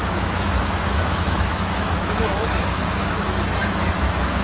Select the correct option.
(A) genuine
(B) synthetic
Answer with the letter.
B